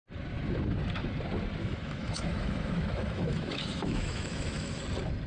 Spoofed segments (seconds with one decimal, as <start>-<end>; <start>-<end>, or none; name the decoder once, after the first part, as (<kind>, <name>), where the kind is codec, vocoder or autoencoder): 1.6-4.8 (autoencoder, DAC-VAE)